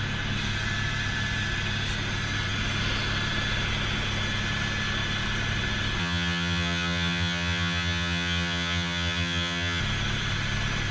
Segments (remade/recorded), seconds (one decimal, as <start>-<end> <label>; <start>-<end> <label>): 0.0-6.0 recorded; 6.0-9.8 remade; 9.8-10.9 recorded

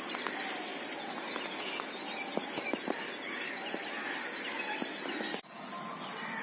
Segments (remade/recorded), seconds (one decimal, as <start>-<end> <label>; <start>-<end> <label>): 0.0-6.4 recorded

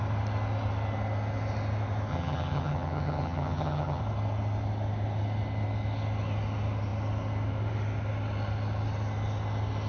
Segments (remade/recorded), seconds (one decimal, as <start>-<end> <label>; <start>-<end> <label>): 0.0-2.1 recorded; 2.1-4.0 remade; 4.0-9.9 recorded

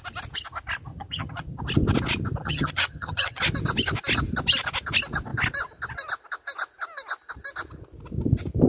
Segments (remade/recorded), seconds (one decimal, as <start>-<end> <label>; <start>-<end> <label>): 0.0-0.9 recorded; 0.9-1.6 remade; 1.6-2.4 recorded; 2.4-3.4 remade; 3.4-8.7 recorded

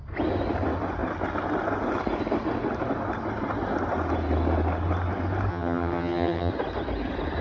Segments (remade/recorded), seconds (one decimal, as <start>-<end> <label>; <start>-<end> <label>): 0.0-5.5 recorded; 5.5-6.5 remade; 6.5-7.4 recorded